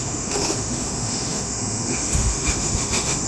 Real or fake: fake